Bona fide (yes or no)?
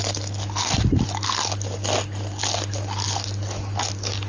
yes